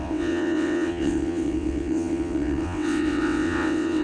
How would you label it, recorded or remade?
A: remade